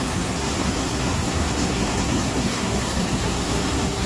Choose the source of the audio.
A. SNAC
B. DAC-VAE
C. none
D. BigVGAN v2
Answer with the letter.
A